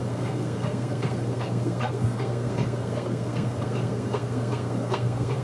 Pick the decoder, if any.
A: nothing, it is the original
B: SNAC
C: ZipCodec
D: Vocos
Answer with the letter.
B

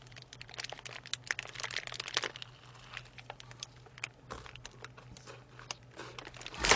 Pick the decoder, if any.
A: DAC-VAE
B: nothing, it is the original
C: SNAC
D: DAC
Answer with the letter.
B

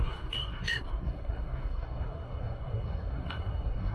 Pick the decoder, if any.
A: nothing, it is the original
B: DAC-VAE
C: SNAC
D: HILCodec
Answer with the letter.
C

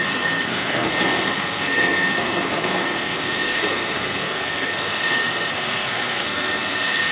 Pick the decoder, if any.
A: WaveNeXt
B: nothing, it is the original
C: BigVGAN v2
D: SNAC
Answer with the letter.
D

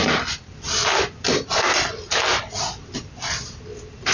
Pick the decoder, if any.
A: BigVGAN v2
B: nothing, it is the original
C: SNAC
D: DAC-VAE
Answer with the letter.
B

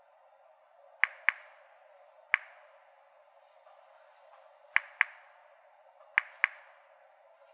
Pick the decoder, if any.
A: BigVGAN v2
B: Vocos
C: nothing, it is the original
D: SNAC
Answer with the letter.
C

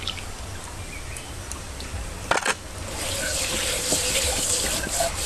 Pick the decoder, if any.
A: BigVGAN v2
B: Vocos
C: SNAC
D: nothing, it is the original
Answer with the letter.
D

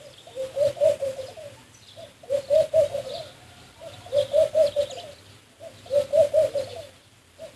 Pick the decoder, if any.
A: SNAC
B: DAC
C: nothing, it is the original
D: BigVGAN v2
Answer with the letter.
C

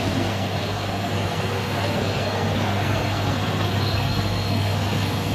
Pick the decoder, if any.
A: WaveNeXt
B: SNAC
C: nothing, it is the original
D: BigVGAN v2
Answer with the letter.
B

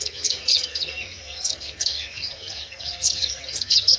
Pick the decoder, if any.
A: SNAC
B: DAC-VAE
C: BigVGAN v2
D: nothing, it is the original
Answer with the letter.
A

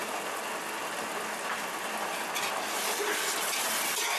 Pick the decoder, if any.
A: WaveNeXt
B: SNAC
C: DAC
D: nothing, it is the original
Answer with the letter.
D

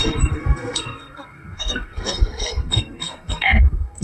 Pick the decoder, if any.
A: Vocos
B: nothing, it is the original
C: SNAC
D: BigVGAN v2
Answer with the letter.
C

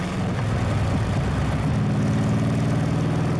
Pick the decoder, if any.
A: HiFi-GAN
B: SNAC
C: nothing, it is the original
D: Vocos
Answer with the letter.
C